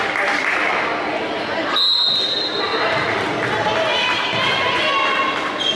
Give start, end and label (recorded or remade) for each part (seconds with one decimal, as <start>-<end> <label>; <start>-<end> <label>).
0.0-5.7 recorded